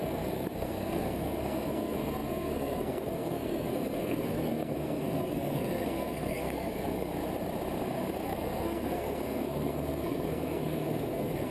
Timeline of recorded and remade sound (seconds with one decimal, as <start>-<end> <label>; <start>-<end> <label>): 0.0-7.1 remade; 7.1-7.8 recorded; 7.8-11.5 remade